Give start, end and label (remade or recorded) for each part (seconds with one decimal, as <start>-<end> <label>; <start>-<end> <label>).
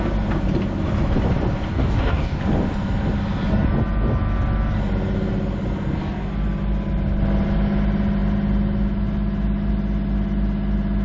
0.0-1.7 recorded; 1.7-2.4 remade; 2.4-11.0 recorded